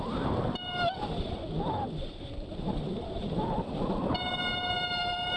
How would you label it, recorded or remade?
recorded